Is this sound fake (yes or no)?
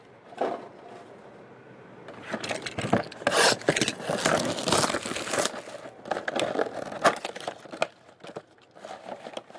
no